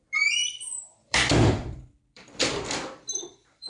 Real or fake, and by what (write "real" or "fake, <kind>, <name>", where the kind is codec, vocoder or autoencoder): fake, vocoder, BigVGAN v2